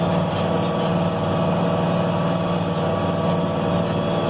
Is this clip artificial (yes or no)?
no